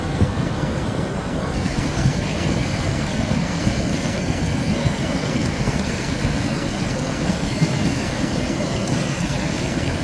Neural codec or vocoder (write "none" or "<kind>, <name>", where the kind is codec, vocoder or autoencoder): codec, SNAC